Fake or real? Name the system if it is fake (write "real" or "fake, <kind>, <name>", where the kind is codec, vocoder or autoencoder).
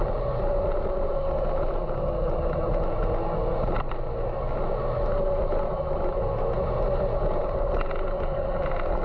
real